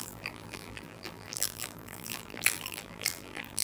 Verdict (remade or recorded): remade